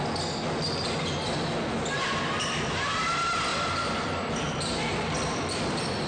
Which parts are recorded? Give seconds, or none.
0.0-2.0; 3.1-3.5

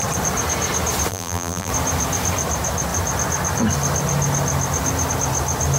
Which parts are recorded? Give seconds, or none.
0.0-1.1; 1.7-5.8

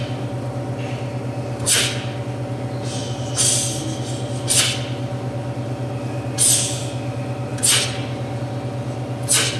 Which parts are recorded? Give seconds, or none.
0.0-9.6

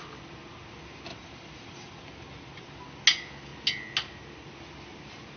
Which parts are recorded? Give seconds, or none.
0.0-1.1; 2.0-5.4

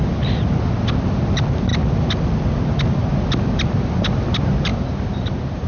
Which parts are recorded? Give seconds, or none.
0.0-4.7

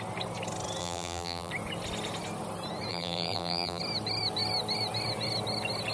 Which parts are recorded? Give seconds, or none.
0.0-0.8; 1.5-2.9; 3.8-5.9

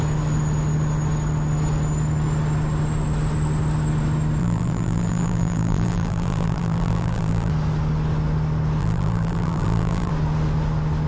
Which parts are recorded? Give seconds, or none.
0.0-4.4; 7.5-8.8; 10.1-11.1

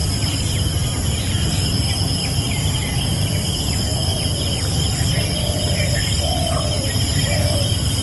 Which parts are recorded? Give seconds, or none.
4.1-5.3